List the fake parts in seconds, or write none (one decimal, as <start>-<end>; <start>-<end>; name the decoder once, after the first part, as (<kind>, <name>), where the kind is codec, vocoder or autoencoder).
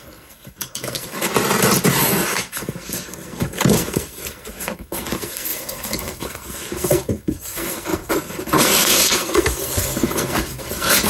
0.0-1.3 (codec, SNAC); 2.0-11.1